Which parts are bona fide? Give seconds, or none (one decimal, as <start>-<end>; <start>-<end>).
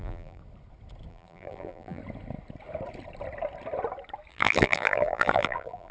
0.4-1.1; 2.0-4.3